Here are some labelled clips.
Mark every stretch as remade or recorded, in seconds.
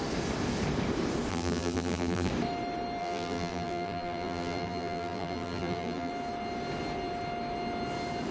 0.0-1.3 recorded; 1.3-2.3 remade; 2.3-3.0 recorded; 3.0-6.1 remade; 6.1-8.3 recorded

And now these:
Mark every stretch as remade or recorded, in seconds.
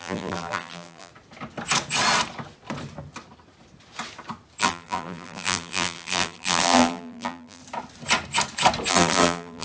0.0-1.1 remade; 1.1-4.6 recorded; 4.6-7.6 remade; 7.6-8.9 recorded; 8.9-9.6 remade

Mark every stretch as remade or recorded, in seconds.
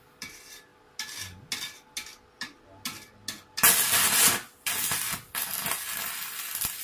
0.0-6.8 recorded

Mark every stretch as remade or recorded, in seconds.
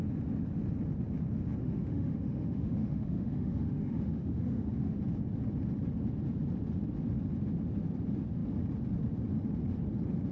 0.0-1.6 recorded; 1.6-5.0 remade; 5.0-10.3 recorded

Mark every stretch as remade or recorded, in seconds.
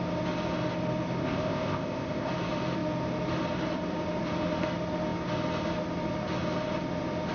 0.0-1.2 recorded; 1.2-2.3 remade; 2.3-7.3 recorded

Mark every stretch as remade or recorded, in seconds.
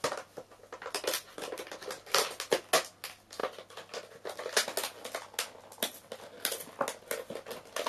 0.0-7.9 recorded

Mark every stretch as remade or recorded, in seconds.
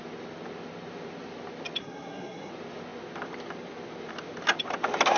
0.0-1.8 recorded; 1.8-2.5 remade; 2.5-5.2 recorded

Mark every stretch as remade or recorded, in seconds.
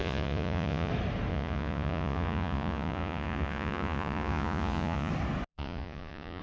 0.0-0.9 remade; 0.9-1.3 recorded; 1.3-5.1 remade; 5.1-5.5 recorded; 5.5-6.4 remade